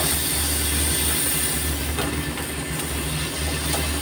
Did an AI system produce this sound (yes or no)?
no